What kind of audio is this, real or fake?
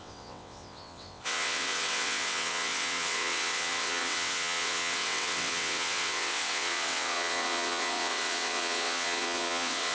fake